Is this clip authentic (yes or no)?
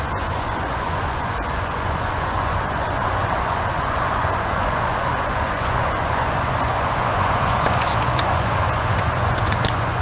no